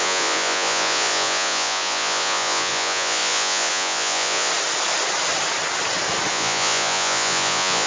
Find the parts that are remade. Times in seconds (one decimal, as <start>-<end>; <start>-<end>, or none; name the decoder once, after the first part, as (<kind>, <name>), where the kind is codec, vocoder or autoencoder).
0.0-4.5 (vocoder, Vocos); 6.3-7.9

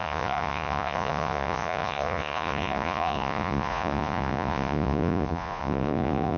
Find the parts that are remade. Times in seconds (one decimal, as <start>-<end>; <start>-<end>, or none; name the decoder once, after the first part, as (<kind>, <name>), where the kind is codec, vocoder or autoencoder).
0.0-6.4 (vocoder, Vocos)

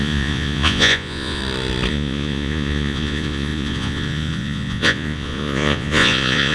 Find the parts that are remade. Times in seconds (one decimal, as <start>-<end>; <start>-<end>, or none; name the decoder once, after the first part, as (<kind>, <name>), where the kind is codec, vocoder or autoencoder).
0.0-1.4 (vocoder, Vocos); 1.9-6.5

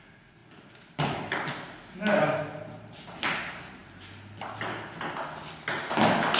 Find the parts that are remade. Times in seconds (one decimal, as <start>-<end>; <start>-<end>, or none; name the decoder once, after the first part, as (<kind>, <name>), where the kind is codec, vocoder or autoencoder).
none